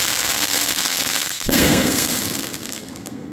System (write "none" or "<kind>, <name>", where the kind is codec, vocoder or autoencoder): codec, SNAC